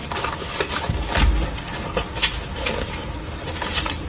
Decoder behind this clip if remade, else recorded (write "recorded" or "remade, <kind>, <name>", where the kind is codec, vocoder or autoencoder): recorded